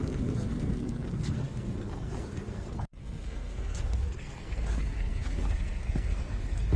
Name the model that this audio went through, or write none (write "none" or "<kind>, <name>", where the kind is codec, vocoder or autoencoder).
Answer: codec, SNAC